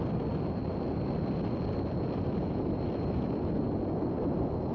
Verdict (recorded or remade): recorded